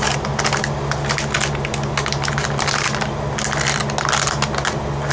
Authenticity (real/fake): real